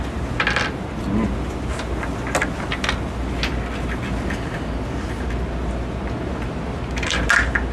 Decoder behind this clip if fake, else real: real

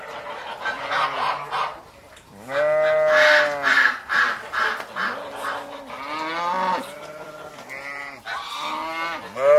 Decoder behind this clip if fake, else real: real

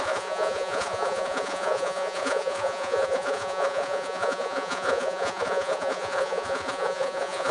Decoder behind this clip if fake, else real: fake, vocoder, Vocos